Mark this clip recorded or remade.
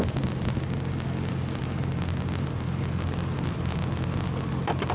recorded